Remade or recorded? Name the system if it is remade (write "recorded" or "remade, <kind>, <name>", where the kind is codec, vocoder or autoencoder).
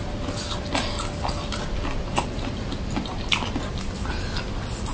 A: recorded